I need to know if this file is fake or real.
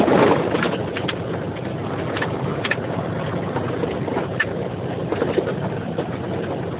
real